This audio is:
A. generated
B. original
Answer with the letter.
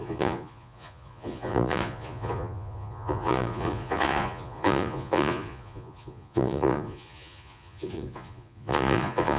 A